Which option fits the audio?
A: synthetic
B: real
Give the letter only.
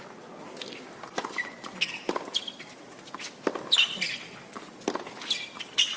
B